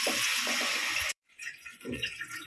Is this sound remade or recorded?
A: remade